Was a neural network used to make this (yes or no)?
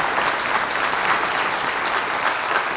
no